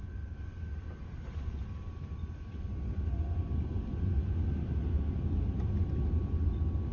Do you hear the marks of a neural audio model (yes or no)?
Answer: no